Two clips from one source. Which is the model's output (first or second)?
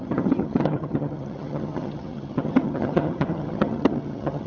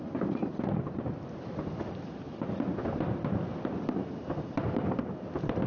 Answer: first